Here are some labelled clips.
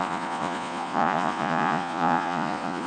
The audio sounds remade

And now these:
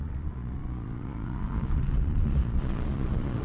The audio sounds remade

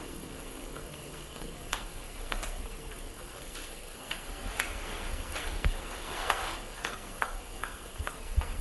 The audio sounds remade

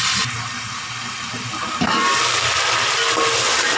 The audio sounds remade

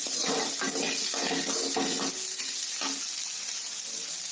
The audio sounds recorded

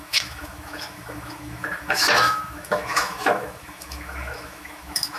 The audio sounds remade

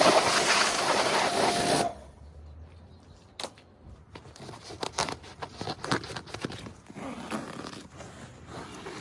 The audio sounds recorded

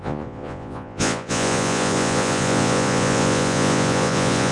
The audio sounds remade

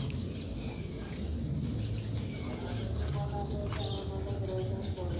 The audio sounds recorded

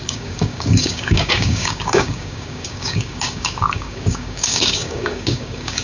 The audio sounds remade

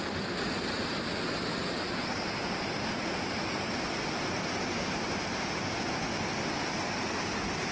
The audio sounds recorded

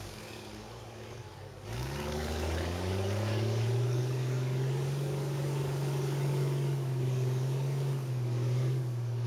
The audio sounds remade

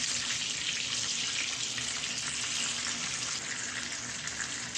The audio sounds recorded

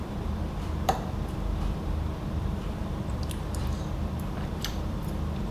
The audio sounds remade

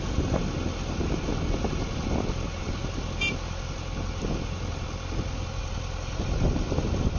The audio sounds recorded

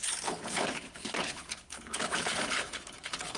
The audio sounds remade